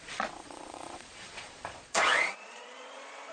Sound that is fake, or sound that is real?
fake